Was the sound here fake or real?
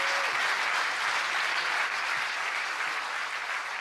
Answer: real